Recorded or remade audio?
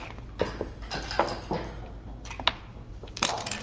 recorded